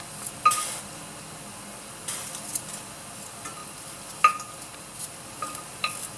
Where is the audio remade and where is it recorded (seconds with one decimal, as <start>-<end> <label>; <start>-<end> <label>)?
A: 0.0-6.2 recorded